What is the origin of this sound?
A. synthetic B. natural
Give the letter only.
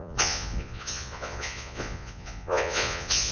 A